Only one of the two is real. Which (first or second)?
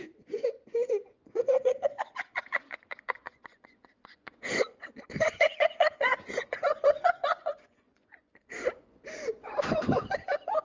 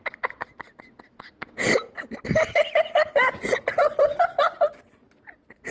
second